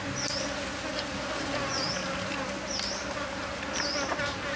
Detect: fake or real real